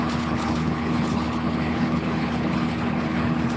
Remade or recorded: remade